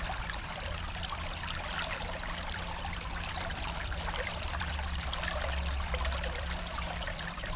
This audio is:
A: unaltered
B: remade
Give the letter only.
B